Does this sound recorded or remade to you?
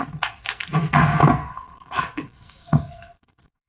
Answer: remade